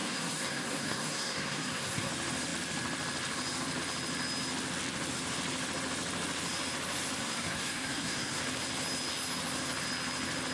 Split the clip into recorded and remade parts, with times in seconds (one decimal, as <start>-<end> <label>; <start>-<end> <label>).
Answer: 0.0-2.1 remade; 2.1-7.2 recorded; 7.2-8.4 remade; 8.4-10.5 recorded